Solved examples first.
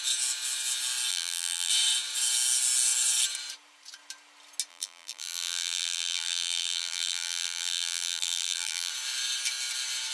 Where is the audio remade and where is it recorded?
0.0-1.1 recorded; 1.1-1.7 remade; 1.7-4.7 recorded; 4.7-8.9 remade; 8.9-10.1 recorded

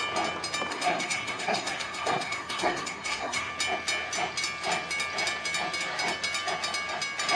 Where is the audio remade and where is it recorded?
0.0-0.7 recorded; 0.7-3.5 remade; 3.5-7.4 recorded

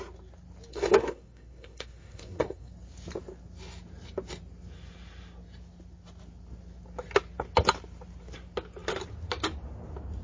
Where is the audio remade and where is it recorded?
0.0-0.7 recorded; 0.7-2.7 remade; 2.7-10.2 recorded